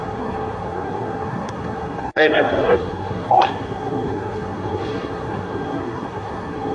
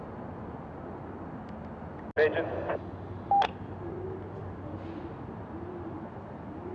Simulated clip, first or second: first